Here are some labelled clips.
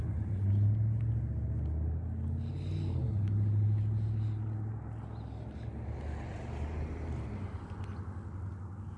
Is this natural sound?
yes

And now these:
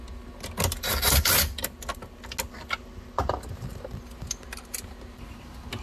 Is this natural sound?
yes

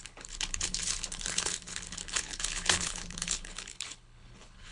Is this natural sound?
no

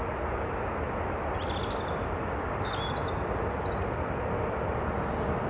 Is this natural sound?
yes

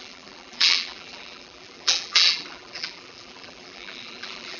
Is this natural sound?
no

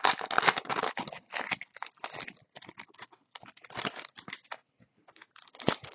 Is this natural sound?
yes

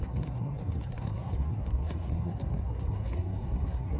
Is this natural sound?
no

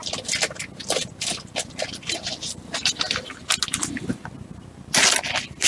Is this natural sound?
yes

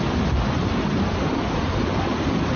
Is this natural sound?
yes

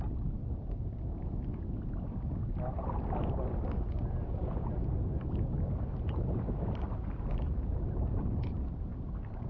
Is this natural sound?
yes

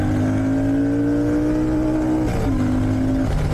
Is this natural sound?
yes